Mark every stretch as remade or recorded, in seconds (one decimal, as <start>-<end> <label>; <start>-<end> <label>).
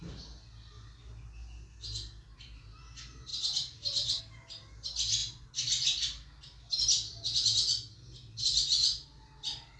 0.0-3.3 recorded; 3.3-4.2 remade; 4.2-9.8 recorded